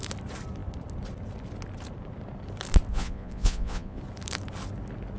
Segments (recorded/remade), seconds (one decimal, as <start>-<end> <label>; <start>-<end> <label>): 0.0-2.9 recorded; 2.9-4.0 remade; 4.0-5.2 recorded